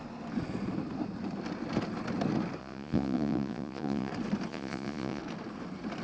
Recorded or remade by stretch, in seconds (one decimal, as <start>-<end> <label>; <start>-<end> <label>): 0.0-2.6 recorded; 2.6-4.1 remade; 4.1-4.5 recorded; 4.5-5.2 remade; 5.2-6.0 recorded